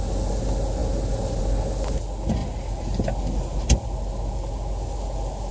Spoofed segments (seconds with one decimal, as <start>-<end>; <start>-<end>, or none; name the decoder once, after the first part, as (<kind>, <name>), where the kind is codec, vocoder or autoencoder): none